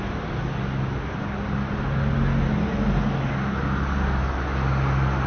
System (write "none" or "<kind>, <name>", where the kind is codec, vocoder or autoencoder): none